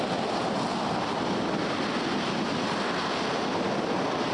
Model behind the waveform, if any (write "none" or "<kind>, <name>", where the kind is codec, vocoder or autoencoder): none